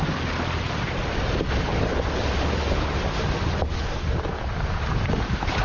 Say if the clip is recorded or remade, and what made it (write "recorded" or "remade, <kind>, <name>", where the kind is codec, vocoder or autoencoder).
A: recorded